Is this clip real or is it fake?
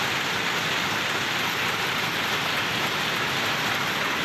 real